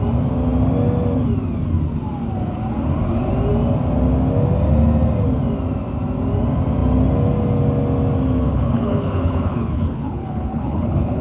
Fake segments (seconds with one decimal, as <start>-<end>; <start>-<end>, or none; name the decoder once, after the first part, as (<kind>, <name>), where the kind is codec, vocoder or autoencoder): 8.5-11.2 (codec, HILCodec)